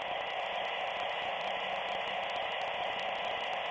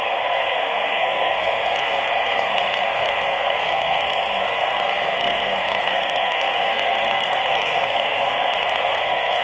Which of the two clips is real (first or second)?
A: first